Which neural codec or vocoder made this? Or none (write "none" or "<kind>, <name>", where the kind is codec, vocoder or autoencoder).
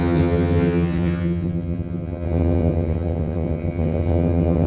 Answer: vocoder, HiFi-GAN